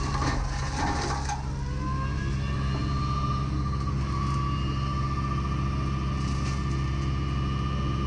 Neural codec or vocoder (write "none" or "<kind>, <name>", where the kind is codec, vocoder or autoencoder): none